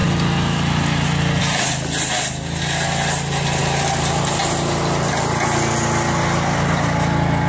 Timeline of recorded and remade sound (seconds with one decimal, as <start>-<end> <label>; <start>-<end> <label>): 0.0-7.5 recorded